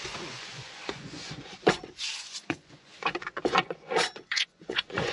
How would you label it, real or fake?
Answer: fake